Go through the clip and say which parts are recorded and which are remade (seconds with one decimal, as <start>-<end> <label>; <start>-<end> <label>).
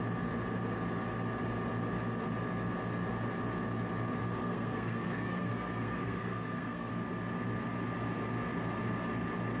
0.0-4.4 recorded; 4.4-6.9 remade; 6.9-9.6 recorded